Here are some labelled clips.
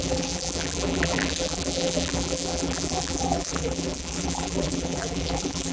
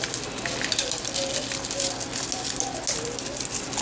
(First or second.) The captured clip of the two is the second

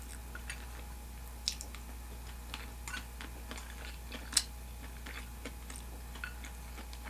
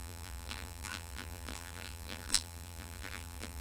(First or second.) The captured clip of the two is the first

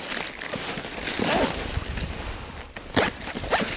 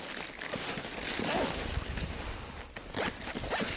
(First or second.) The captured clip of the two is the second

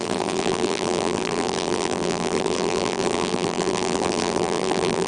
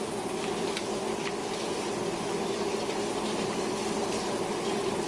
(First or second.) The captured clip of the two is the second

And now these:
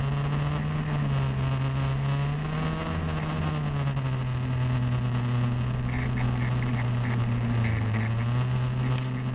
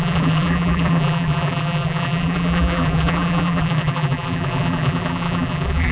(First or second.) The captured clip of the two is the first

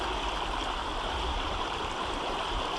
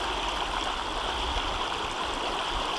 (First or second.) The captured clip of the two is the second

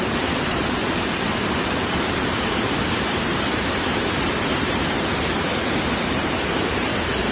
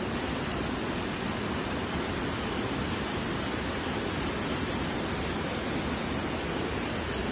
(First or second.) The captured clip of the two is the second